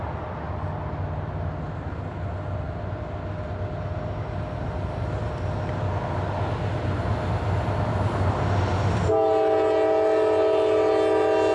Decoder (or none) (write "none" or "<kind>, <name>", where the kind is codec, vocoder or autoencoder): none